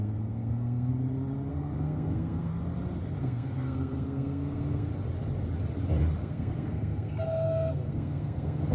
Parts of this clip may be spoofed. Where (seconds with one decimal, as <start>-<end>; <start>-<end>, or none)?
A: 0.0-0.9; 1.5-2.5; 3.2-4.9; 6.2-8.7

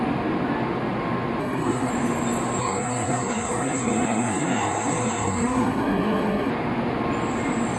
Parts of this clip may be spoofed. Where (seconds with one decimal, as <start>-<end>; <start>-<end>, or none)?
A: 1.4-1.9; 2.6-6.5

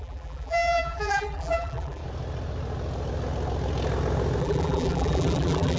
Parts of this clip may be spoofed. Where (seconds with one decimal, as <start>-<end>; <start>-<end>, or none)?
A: 0.0-2.0; 4.4-5.8

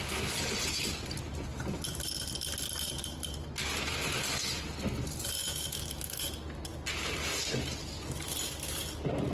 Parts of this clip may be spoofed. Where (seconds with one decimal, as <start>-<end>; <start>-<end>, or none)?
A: 5.4-6.2

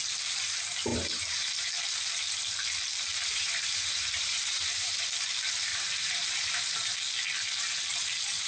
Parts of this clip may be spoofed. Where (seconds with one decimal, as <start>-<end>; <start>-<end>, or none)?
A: 0.9-1.5; 3.1-5.1; 5.7-6.9

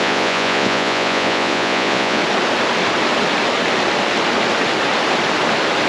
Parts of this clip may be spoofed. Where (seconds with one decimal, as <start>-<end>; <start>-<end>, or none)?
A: 0.0-2.2

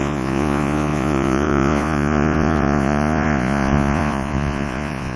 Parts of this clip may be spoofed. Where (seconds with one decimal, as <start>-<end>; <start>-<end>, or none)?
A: 0.0-5.2